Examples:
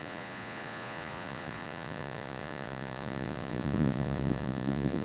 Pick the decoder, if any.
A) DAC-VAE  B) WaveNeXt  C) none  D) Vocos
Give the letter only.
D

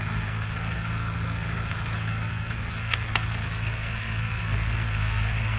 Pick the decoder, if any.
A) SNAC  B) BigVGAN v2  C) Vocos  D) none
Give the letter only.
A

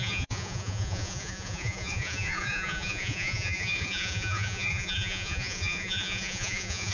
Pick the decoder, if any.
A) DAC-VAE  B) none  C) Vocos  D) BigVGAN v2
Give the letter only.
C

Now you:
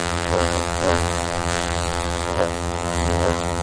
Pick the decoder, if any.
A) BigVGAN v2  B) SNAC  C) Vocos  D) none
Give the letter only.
A